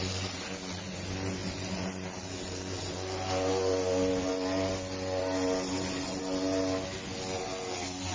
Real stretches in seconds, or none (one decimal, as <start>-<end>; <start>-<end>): 0.0-8.1

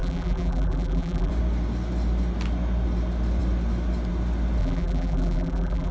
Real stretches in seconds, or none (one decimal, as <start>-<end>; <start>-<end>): 1.3-4.6